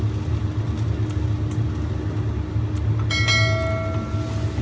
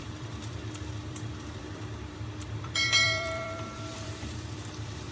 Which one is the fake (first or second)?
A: second